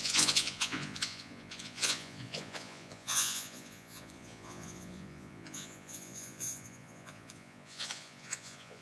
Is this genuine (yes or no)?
no